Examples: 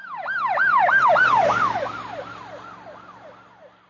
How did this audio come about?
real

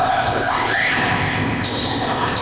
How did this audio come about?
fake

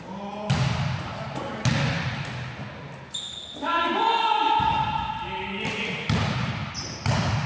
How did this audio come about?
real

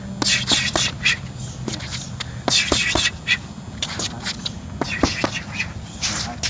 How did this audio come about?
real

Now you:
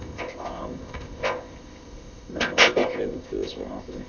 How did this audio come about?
fake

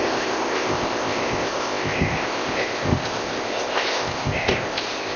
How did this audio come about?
fake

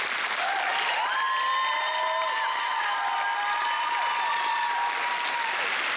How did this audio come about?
real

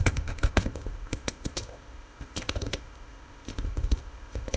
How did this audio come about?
fake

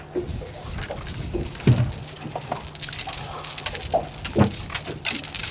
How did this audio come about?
real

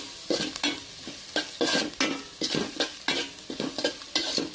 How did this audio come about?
real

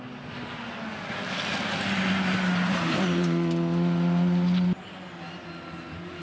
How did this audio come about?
real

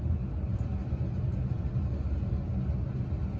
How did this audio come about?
real